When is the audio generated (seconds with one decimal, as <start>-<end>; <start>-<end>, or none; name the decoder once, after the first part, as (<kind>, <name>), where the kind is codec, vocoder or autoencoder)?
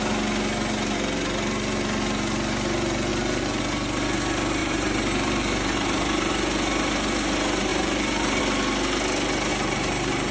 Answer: 3.1-3.6 (vocoder, BigVGAN v2); 4.6-6.3; 7.7-8.4; 9.5-10.3